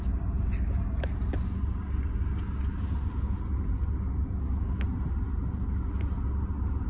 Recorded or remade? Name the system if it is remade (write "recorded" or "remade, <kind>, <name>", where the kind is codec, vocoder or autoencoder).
recorded